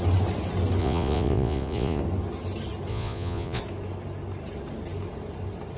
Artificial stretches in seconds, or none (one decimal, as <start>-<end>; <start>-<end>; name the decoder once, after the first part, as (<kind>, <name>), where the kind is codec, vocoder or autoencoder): 0.8-2.0 (vocoder, Vocos); 2.9-3.6